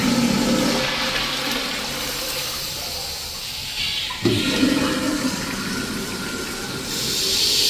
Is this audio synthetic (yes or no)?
no